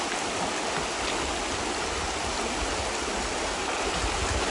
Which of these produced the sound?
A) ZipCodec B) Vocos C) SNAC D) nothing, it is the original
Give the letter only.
D